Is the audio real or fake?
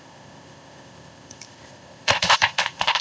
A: fake